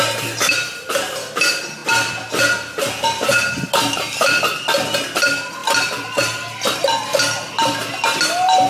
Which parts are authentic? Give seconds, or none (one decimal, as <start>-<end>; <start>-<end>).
0.0-8.7